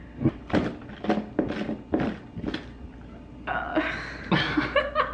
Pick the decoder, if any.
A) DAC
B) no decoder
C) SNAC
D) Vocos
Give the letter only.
B